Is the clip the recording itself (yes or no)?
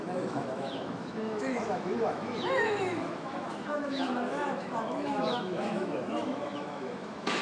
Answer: no